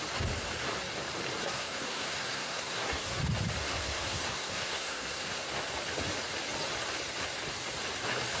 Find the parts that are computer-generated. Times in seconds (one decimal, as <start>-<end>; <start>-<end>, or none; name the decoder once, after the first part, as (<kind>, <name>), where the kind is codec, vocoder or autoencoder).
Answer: 1.4-3.2 (codec, SNAC); 3.6-5.4